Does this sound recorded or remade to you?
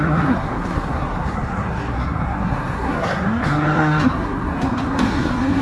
remade